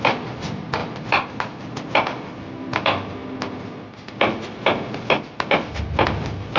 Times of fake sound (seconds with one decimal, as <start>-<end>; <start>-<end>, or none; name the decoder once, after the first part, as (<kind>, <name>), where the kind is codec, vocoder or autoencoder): 0.8-1.3 (vocoder, BigVGAN v2)